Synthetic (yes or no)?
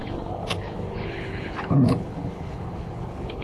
yes